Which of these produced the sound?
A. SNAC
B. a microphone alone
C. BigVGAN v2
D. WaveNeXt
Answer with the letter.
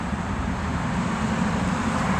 C